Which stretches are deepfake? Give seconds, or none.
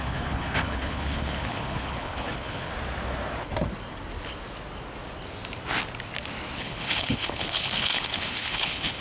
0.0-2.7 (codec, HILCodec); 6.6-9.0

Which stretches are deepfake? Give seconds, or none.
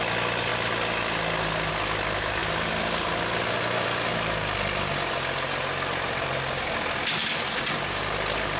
none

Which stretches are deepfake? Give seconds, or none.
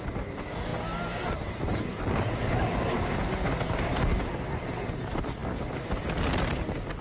none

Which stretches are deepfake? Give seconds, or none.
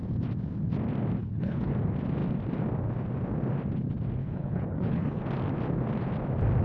1.2-1.7 (codec, HILCodec); 4.2-5.2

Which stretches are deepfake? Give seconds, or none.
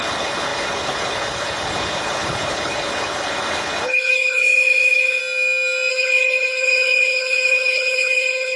0.0-5.2 (codec, HILCodec); 5.9-8.6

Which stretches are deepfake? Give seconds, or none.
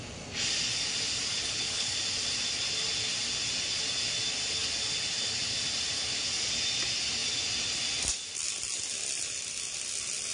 1.4-2.0 (codec, HILCodec)